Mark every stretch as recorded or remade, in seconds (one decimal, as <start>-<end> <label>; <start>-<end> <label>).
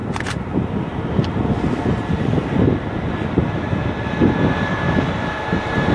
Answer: 0.0-5.9 recorded